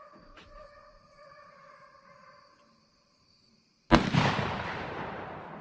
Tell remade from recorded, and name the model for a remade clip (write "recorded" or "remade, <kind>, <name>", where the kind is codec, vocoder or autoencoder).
remade, vocoder, BigVGAN v2